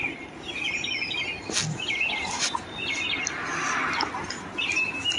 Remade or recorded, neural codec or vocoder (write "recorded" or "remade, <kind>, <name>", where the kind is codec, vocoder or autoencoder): recorded